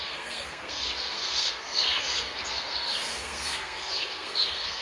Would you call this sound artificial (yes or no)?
yes